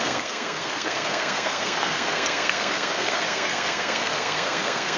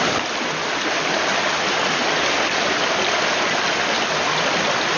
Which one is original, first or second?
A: second